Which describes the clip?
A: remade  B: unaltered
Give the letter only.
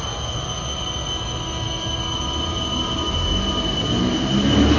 B